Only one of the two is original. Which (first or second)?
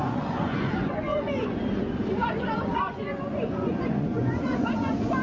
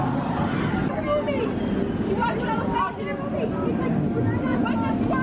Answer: second